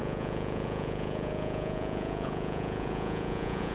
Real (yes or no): no